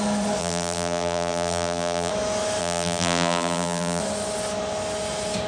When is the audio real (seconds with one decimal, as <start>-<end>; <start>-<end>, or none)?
0.0-0.4; 2.1-2.6; 4.0-5.5